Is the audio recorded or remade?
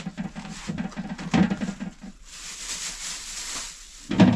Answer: recorded